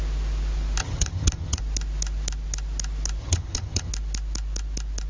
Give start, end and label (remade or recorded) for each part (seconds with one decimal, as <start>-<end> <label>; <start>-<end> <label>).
0.0-0.8 recorded; 0.8-1.6 remade; 1.6-3.2 recorded; 3.2-3.9 remade; 3.9-5.1 recorded